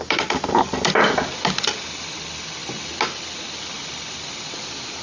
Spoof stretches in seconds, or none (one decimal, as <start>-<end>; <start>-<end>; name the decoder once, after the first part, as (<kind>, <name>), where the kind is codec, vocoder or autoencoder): none